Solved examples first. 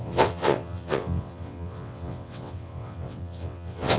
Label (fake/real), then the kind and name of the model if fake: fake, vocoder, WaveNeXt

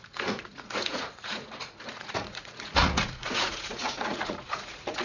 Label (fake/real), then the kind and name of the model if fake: fake, vocoder, Vocos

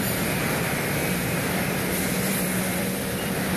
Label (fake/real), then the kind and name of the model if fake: fake, vocoder, BigVGAN v2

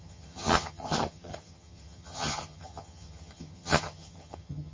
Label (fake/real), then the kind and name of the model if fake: fake, vocoder, HiFi-GAN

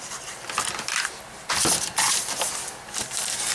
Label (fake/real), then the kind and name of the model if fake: real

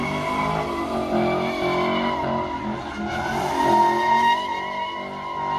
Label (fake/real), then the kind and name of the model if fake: real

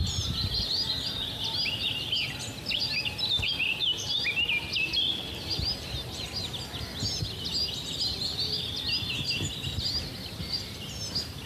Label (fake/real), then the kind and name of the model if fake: real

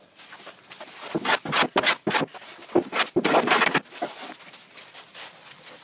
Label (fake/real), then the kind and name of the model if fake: fake, vocoder, BigVGAN v2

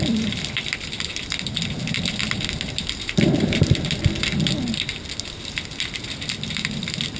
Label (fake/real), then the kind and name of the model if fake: real